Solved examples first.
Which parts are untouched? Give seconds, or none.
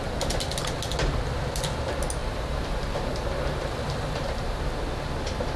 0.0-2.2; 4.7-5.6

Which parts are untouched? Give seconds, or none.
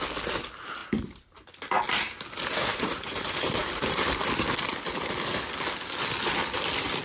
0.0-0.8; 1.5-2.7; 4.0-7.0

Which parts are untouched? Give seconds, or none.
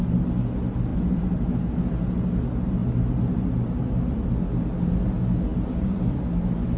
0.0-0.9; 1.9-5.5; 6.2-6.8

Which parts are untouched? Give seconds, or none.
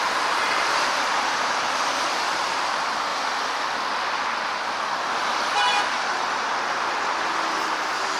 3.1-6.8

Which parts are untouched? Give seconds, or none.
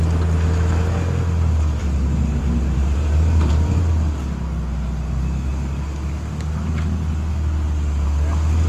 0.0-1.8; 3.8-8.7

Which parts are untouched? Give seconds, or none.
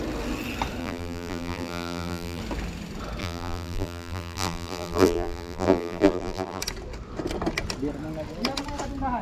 0.0-0.8; 2.4-3.2; 6.6-9.2